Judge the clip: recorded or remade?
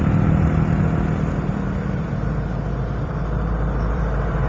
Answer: remade